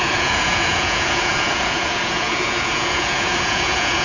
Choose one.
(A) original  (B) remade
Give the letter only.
B